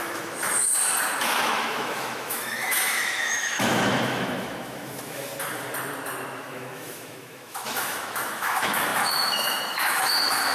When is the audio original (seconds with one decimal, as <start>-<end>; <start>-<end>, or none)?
0.7-1.2; 5.3-6.4

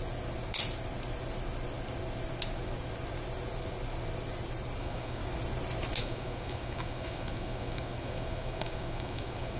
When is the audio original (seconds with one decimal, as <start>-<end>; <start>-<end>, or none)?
0.0-4.8; 5.2-6.0

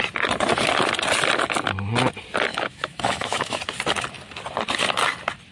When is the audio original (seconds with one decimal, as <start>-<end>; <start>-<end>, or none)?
0.0-2.5; 3.6-5.5

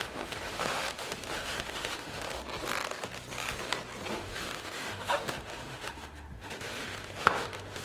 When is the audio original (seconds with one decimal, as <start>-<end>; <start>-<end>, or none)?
2.4-4.1

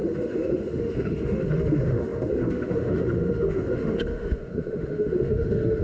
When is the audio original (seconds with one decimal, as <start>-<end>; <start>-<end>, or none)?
none

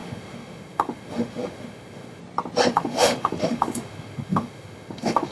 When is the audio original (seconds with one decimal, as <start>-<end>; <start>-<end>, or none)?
2.2-2.7